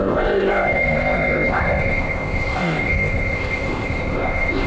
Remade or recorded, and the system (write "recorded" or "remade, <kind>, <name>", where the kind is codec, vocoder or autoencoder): remade, codec, ZipCodec